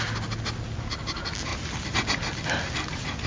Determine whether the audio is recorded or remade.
recorded